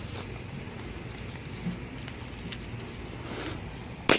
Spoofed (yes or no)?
no